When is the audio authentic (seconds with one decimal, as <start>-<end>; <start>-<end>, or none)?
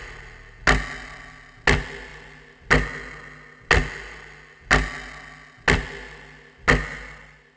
0.0-7.6